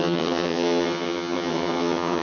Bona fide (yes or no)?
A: no